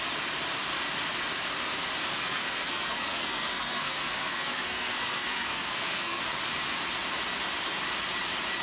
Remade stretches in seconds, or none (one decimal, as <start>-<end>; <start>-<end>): 2.1-6.2